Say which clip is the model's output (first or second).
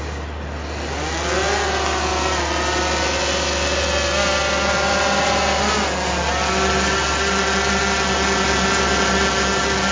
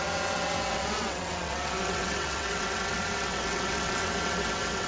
second